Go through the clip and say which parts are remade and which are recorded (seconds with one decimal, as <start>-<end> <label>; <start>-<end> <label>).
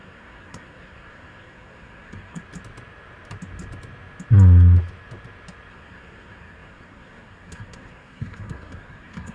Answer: 0.0-2.4 remade; 2.4-5.7 recorded; 5.7-9.3 remade